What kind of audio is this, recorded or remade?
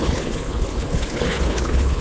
remade